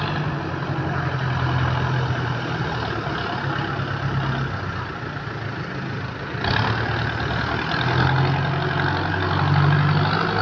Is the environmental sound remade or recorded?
recorded